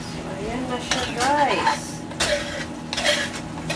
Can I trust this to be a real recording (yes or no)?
yes